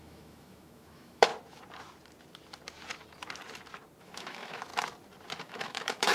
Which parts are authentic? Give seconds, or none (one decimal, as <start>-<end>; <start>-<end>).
1.3-4.0; 4.7-5.4